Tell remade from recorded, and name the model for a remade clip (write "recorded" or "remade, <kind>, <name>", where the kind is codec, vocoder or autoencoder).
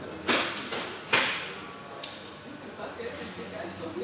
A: recorded